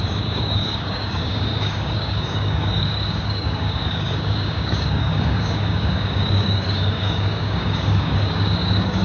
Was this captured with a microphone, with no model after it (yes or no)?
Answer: no